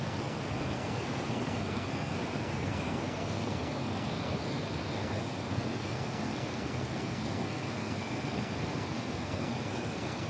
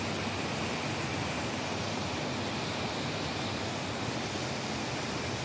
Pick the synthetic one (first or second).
first